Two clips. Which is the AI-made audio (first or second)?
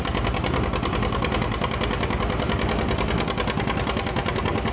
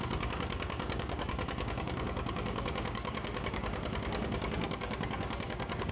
second